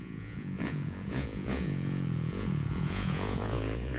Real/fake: fake